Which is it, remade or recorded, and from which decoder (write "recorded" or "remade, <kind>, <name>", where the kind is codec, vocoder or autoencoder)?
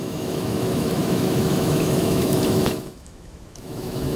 remade, autoencoder, DAC-VAE